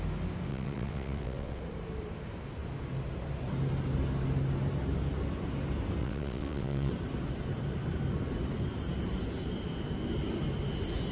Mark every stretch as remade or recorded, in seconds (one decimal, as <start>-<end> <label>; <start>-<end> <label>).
0.0-0.5 recorded; 0.5-1.6 remade; 1.6-6.0 recorded; 6.0-6.9 remade; 6.9-11.1 recorded